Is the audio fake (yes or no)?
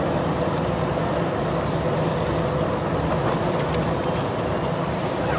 no